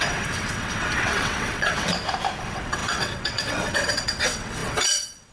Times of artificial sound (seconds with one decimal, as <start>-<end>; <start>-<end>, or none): 0.0-1.9; 2.4-5.3